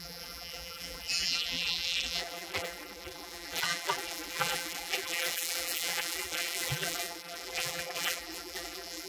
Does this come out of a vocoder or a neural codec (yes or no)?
yes